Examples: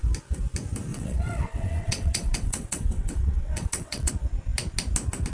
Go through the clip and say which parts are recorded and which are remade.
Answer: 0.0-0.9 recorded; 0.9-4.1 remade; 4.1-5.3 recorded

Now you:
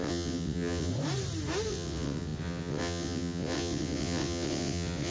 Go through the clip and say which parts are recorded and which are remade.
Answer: 0.0-0.9 remade; 0.9-1.7 recorded; 1.7-5.1 remade

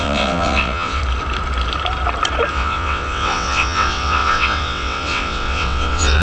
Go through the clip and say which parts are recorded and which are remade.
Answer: 0.0-1.0 remade; 1.0-2.5 recorded; 2.5-6.2 remade

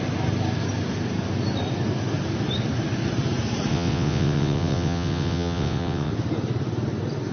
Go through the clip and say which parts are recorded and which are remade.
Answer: 0.0-3.7 recorded; 3.7-6.1 remade; 6.1-7.3 recorded

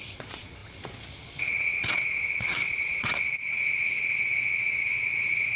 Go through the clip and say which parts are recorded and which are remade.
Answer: 0.0-5.6 remade

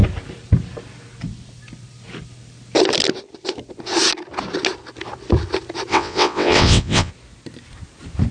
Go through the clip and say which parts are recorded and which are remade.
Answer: 0.0-5.9 recorded; 5.9-7.1 remade; 7.1-8.3 recorded

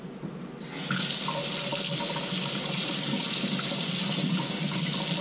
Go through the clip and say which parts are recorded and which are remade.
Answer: 0.0-5.2 recorded